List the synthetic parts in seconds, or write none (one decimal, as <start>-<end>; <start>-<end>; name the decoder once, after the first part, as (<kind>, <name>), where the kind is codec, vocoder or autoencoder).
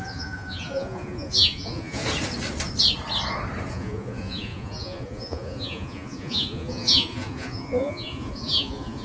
0.0-2.0 (vocoder, Vocos); 3.7-9.0